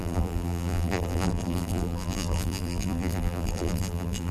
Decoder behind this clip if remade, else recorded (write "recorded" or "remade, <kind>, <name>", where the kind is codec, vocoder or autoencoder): remade, vocoder, BigVGAN v2